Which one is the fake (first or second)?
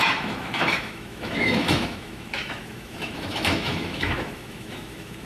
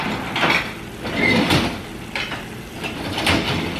first